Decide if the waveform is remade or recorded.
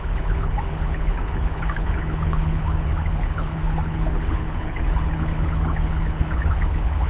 remade